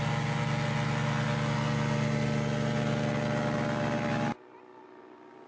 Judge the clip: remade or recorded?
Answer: recorded